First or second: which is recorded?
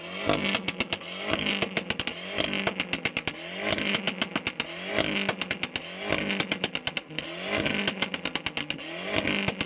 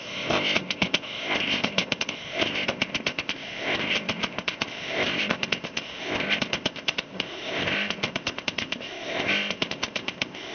first